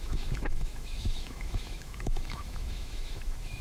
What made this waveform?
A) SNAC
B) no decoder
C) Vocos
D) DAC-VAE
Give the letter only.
D